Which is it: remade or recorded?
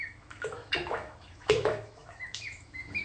remade